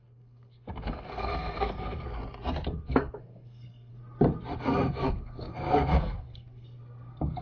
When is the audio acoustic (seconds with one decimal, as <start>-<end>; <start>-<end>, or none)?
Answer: 2.2-2.9; 3.9-4.6